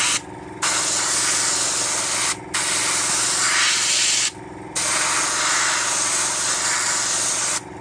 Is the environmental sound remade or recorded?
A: recorded